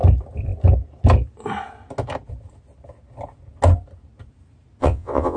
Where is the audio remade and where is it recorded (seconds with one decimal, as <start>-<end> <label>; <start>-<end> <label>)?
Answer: 0.0-4.8 recorded; 4.8-5.4 remade